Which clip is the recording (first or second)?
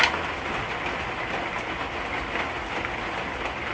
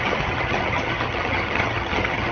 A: first